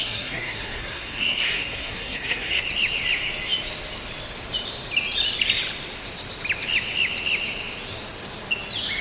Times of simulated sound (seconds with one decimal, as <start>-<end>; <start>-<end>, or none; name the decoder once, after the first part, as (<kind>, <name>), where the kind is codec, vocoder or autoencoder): 0.0-2.6 (codec, SNAC)

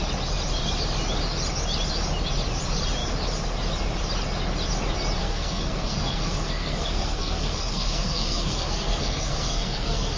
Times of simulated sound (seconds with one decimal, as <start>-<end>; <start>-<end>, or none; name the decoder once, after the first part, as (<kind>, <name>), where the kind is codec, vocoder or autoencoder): 5.2-10.2 (codec, SNAC)

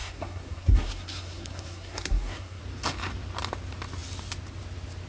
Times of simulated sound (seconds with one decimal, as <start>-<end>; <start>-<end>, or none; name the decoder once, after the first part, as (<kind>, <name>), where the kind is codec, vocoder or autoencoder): 0.0-2.6 (codec, SNAC)

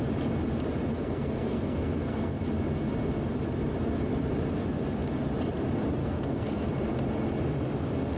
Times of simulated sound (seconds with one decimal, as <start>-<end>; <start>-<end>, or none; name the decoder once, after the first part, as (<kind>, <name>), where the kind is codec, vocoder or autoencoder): 0.9-2.4 (codec, SNAC); 6.0-6.7

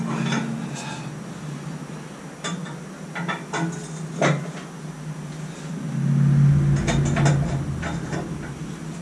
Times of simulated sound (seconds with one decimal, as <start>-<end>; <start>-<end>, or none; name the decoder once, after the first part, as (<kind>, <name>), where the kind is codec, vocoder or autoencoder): none

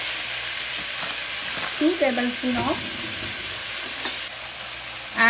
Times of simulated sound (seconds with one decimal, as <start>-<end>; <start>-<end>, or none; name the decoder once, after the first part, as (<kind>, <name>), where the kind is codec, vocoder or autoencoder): none

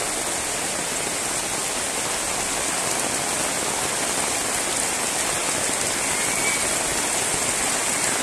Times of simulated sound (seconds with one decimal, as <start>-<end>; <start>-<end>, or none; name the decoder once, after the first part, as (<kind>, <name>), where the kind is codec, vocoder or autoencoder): none

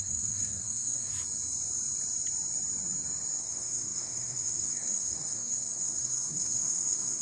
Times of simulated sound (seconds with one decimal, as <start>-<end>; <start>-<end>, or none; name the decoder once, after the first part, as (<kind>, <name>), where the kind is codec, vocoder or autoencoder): 0.0-1.1 (codec, SNAC); 3.4-7.2